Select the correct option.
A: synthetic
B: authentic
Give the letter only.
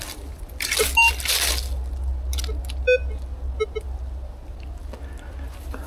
B